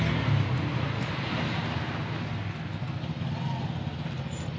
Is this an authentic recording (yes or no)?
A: yes